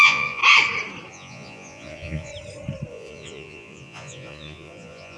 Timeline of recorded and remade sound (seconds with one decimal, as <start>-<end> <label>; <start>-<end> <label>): 0.0-0.4 remade; 0.4-1.1 recorded; 1.1-2.3 remade; 2.3-2.9 recorded; 2.9-5.2 remade